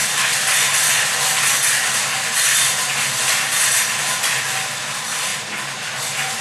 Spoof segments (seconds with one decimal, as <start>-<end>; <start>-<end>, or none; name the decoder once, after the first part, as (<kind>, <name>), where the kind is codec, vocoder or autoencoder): none